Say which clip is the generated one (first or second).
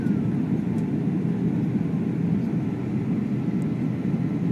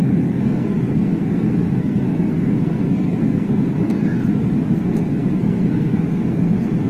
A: second